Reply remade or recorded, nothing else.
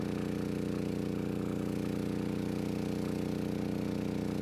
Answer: recorded